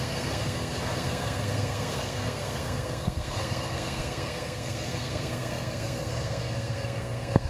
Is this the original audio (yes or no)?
no